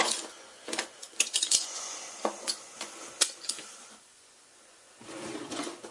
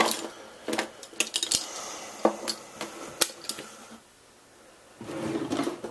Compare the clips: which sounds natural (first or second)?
second